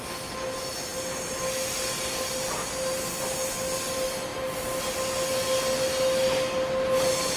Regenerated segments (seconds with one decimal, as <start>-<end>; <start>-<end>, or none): none